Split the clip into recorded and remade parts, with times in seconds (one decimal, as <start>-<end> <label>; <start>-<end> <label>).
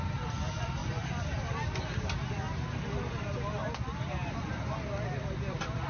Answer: 0.0-5.9 recorded